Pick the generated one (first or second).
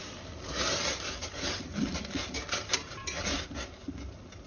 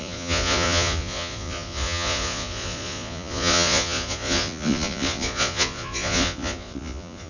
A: second